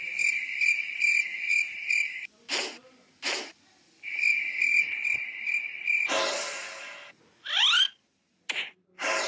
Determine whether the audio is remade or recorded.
recorded